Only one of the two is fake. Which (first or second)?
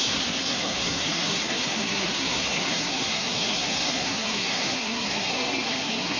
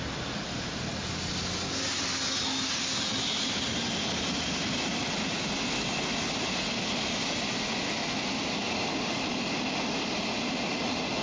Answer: first